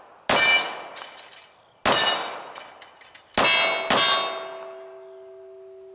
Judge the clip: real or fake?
real